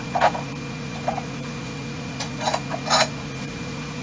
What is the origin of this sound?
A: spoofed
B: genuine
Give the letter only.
A